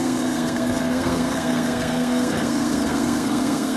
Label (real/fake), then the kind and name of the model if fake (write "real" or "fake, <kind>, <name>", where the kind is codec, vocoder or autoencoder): fake, codec, SNAC